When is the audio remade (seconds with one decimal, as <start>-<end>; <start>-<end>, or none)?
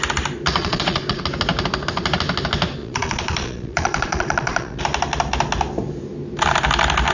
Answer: 0.6-1.2; 2.8-4.8